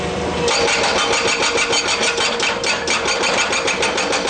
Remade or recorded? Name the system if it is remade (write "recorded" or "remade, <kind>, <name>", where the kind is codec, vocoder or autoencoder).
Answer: remade, vocoder, BigVGAN v2